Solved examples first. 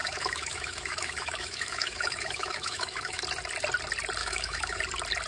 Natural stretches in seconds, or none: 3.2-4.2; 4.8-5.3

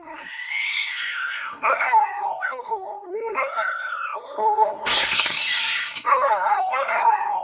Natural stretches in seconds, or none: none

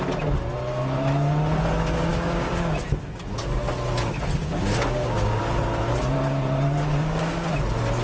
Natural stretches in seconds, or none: 0.0-2.1; 2.8-4.4; 5.4-6.9; 7.5-8.0

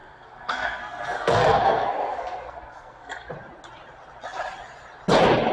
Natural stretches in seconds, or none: 3.3-5.5

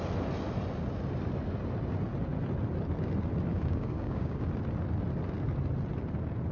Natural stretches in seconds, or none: 0.0-3.5; 4.5-6.5